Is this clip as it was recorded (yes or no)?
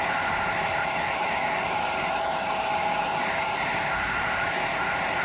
yes